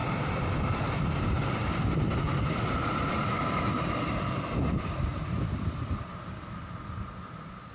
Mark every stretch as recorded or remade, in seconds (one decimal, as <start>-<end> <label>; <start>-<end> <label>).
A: 0.0-3.1 remade; 3.1-5.1 recorded; 5.1-6.1 remade; 6.1-7.7 recorded